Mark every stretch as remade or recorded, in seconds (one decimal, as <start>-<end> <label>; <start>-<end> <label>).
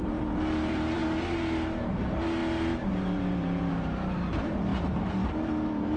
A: 0.0-6.0 remade